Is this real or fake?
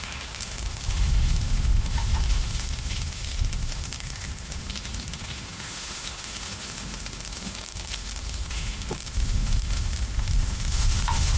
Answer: fake